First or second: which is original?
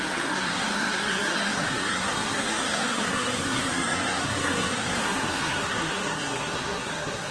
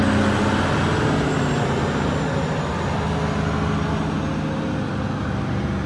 second